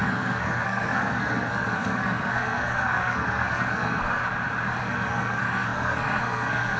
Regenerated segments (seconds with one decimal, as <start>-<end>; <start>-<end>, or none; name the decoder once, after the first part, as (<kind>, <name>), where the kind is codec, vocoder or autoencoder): 0.0-4.2 (codec, SNAC); 4.8-6.8